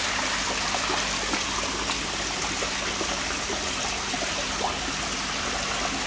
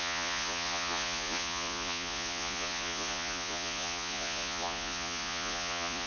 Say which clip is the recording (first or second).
first